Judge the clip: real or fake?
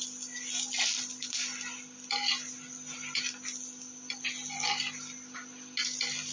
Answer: real